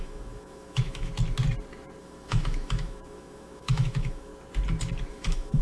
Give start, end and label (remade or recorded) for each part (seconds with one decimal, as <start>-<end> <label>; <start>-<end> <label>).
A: 0.0-1.1 remade; 1.1-2.0 recorded; 2.0-4.3 remade; 4.3-5.1 recorded; 5.1-5.6 remade